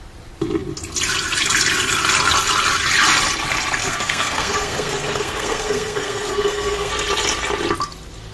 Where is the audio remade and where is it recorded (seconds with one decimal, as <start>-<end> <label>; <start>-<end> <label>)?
0.0-3.8 recorded; 3.8-6.9 remade; 6.9-8.3 recorded